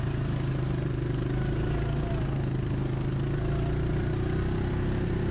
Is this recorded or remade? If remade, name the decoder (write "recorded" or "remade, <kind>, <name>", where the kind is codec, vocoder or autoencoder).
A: recorded